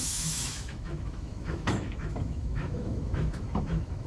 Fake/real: fake